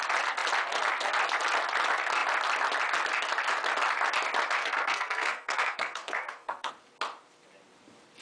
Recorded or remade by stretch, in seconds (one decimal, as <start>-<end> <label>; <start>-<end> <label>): 0.0-4.6 recorded; 4.6-6.7 remade; 6.7-8.2 recorded